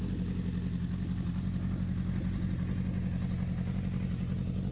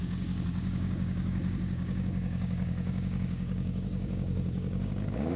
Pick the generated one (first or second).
second